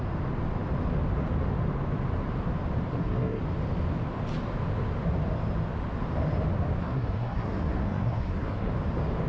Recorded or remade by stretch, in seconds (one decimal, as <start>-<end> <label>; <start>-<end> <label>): 0.0-2.9 recorded; 2.9-3.4 remade; 3.4-6.8 recorded; 6.8-8.7 remade; 8.7-9.3 recorded